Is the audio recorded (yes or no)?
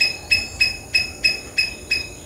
yes